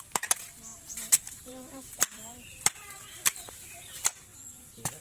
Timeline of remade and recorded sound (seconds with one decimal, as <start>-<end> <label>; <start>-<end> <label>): 0.0-0.7 recorded; 0.7-3.7 remade; 3.7-5.0 recorded